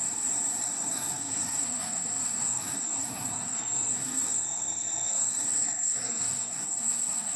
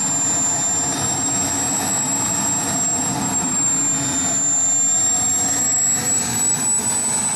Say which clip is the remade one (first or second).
first